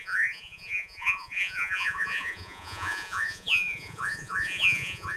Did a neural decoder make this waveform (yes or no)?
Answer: yes